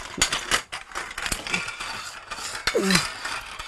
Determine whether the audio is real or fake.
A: real